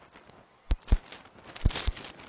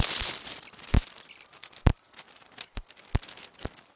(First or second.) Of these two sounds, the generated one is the second